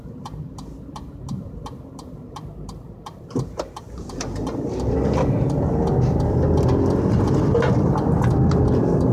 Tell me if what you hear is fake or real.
fake